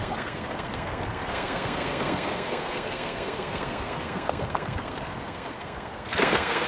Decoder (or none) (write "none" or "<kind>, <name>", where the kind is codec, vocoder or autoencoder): codec, SNAC